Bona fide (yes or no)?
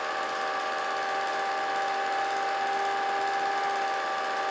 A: yes